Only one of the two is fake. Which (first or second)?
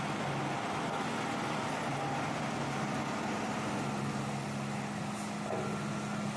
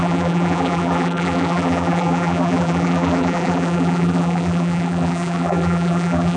second